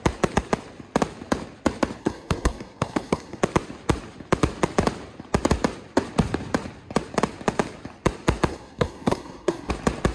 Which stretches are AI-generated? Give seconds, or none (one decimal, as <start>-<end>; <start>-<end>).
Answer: 2.0-3.4; 8.5-9.7